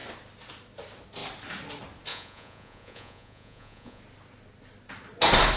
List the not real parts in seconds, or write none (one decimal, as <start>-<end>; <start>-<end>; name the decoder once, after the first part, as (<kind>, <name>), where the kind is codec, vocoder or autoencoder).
2.1-4.0 (vocoder, Vocos)